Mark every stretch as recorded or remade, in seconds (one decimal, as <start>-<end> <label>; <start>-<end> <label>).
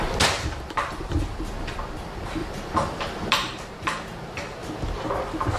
0.0-2.4 recorded; 2.4-3.7 remade; 3.7-5.6 recorded